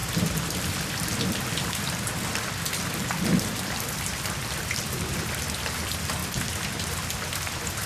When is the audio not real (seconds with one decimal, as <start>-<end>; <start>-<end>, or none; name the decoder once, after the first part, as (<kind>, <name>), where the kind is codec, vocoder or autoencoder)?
0.0-6.2 (vocoder, BigVGAN v2); 6.8-7.9